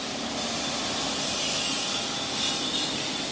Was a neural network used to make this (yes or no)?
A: no